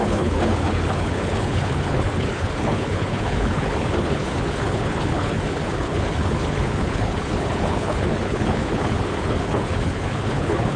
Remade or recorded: remade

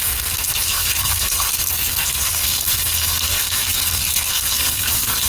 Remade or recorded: remade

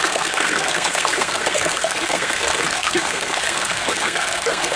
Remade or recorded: remade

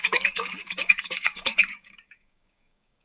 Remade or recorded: remade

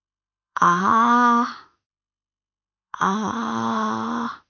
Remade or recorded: remade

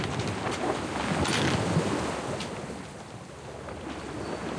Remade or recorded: recorded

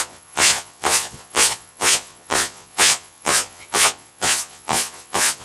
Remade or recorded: remade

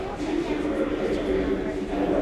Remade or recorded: recorded